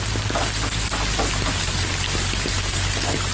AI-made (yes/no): no